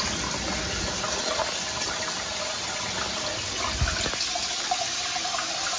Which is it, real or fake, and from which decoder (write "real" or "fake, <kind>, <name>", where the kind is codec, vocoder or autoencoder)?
real